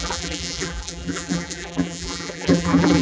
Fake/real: fake